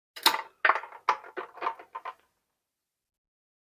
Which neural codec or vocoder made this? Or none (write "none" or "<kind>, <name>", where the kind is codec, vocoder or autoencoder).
none